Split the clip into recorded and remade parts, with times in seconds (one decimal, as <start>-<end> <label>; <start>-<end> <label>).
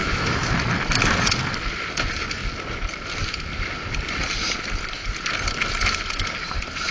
0.0-0.5 remade; 0.5-6.9 recorded